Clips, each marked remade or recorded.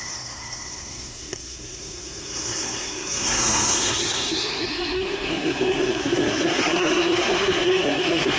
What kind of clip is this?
remade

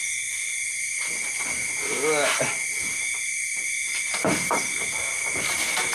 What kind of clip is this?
recorded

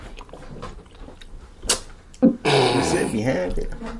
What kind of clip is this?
recorded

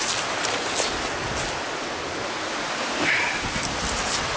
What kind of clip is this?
recorded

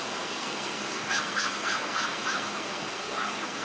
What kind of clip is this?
remade